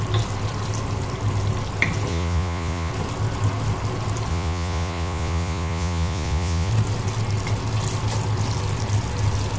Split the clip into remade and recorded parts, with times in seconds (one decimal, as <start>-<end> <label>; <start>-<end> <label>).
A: 0.0-2.1 recorded; 2.1-2.9 remade; 2.9-4.3 recorded; 4.3-6.7 remade; 6.7-9.6 recorded